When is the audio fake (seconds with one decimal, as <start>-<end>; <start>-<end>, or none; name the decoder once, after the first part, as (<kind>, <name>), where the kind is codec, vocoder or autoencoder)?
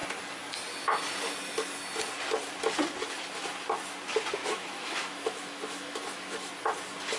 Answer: 4.4-6.5 (autoencoder, DAC-VAE)